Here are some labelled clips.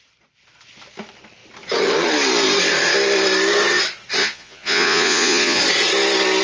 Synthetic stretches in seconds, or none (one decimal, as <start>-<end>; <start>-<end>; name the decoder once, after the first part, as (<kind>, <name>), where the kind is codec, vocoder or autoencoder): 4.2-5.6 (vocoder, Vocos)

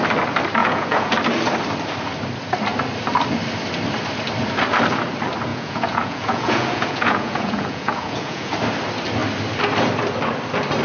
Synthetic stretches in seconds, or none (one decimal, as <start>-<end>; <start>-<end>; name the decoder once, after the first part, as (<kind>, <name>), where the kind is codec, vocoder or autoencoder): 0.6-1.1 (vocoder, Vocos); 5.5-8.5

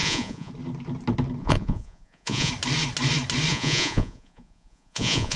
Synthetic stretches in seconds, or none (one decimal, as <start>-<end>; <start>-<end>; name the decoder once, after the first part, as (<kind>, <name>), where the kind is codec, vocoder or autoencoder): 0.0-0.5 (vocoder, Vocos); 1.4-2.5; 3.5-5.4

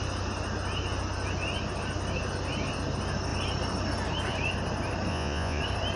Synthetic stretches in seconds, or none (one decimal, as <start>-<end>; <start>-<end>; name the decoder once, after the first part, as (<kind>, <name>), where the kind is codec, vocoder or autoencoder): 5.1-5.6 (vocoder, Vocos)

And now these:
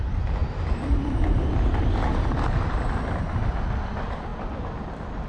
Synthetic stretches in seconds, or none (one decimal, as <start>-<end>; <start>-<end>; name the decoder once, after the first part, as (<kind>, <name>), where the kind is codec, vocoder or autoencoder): none